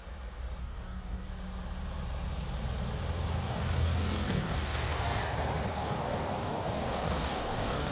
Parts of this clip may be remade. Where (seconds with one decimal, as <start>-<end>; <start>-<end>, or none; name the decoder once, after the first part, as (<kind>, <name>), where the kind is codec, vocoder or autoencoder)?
0.6-1.3 (codec, DAC); 3.4-5.2; 5.7-7.9